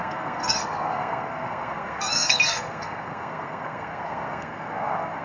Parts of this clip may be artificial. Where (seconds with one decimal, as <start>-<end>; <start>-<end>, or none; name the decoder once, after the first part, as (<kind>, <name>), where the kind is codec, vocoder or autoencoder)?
0.0-5.2 (codec, SNAC)